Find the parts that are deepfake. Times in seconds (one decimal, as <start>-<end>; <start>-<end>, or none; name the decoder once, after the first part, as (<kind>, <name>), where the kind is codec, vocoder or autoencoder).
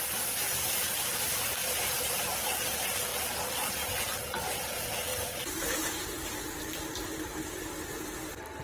1.6-2.4 (vocoder, BigVGAN v2); 5.1-6.5